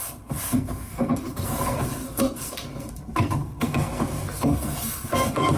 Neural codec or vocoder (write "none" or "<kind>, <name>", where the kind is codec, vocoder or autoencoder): codec, SNAC